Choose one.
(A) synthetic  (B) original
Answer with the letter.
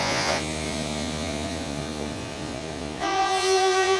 A